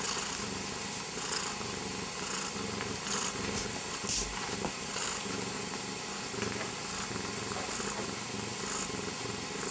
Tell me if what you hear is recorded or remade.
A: recorded